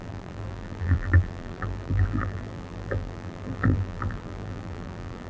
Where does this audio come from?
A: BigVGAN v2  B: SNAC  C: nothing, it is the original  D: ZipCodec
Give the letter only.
A